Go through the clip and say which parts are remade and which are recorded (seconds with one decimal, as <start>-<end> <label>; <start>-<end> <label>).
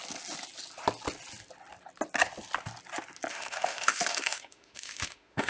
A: 0.0-3.3 recorded; 3.3-5.5 remade